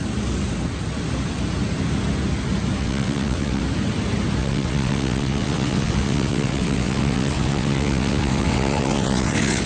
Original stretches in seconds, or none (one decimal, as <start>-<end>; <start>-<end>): 0.0-2.8; 3.6-4.4